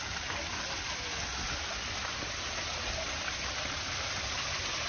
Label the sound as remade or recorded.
recorded